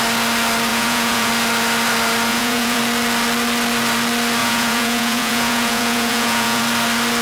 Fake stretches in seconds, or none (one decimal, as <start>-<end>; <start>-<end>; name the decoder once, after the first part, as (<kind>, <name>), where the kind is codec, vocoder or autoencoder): 0.7-1.3 (vocoder, Vocos); 2.3-2.8; 4.4-6.6